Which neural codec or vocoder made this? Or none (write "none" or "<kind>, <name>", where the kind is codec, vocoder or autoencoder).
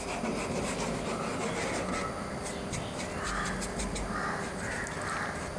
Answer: none